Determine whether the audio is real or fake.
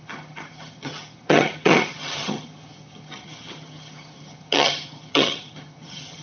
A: fake